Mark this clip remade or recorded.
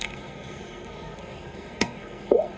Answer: remade